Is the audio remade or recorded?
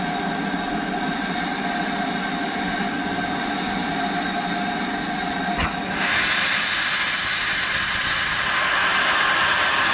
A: recorded